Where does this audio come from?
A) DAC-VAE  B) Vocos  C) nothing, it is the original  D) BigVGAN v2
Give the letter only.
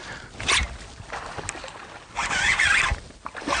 C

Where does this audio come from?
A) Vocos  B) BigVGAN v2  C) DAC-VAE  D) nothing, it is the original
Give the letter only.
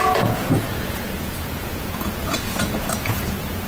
A